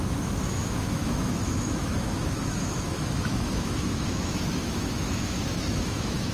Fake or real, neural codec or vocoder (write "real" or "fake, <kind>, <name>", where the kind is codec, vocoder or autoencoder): fake, autoencoder, DAC-VAE